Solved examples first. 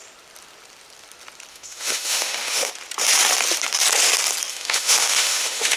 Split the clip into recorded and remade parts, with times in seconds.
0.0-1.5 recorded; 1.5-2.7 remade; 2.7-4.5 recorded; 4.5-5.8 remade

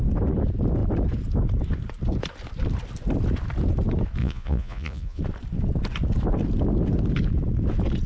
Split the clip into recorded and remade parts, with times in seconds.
0.0-4.2 recorded; 4.2-5.2 remade; 5.2-8.1 recorded

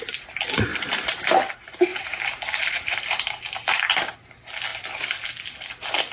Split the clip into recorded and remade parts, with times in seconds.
0.0-0.7 recorded; 0.7-1.3 remade; 1.3-1.9 recorded; 1.9-3.9 remade; 3.9-4.7 recorded; 4.7-5.4 remade; 5.4-6.1 recorded

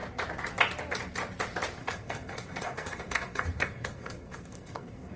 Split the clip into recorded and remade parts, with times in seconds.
0.0-1.8 recorded; 1.8-5.2 remade

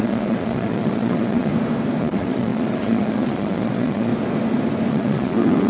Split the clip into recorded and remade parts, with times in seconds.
0.0-1.5 remade; 1.5-2.0 recorded; 2.0-4.1 remade; 4.1-4.9 recorded; 4.9-5.7 remade

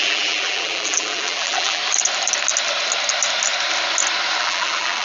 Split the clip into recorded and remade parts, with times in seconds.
0.0-1.8 remade; 1.8-4.4 recorded; 4.4-5.0 remade

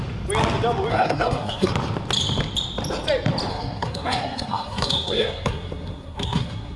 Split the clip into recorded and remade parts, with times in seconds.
0.0-0.9 recorded; 0.9-1.7 remade; 1.7-3.5 recorded; 3.5-6.8 remade